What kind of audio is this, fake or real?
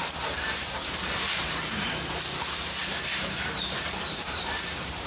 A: fake